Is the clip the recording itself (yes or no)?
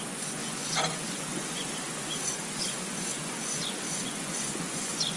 no